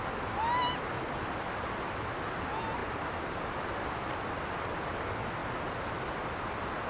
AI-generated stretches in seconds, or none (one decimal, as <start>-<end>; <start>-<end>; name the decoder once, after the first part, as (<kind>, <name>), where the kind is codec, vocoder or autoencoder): 2.8-3.6 (vocoder, BigVGAN v2); 5.4-6.0